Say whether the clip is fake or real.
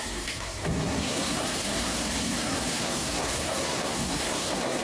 fake